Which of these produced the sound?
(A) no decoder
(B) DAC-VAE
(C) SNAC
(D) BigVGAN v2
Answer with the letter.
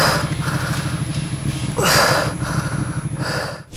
A